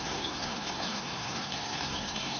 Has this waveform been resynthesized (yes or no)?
yes